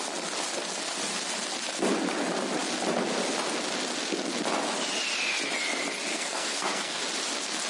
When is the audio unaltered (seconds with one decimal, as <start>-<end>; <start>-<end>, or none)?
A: 0.0-6.1; 7.0-7.7